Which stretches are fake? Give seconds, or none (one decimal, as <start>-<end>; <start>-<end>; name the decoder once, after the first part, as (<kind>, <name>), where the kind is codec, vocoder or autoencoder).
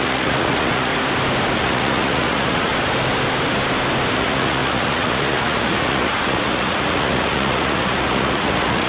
0.0-0.9 (vocoder, Vocos); 1.5-2.7; 4.1-8.9